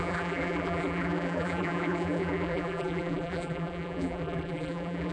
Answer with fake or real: fake